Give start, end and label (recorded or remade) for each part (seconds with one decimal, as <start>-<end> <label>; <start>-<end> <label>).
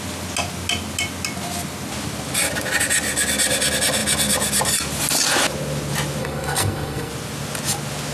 0.0-6.2 recorded; 6.2-7.1 remade; 7.1-8.1 recorded